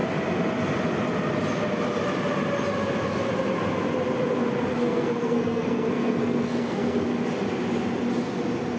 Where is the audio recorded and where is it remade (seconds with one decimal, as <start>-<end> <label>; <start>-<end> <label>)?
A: 0.0-4.7 recorded; 4.7-7.1 remade; 7.1-8.8 recorded